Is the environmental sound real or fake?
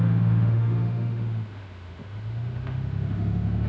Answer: fake